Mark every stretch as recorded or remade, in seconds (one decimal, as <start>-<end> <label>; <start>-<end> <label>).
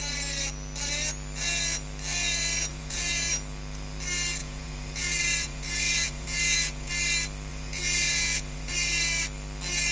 0.0-2.7 recorded; 2.7-3.3 remade; 3.3-4.4 recorded; 4.4-6.9 remade; 6.9-7.5 recorded; 7.5-8.7 remade; 8.7-9.9 recorded